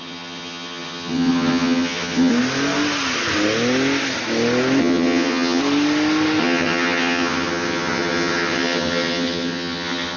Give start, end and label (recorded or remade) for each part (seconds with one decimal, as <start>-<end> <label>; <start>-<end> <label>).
0.0-2.3 remade; 2.3-4.8 recorded; 4.8-5.6 remade; 5.6-6.4 recorded; 6.4-10.2 remade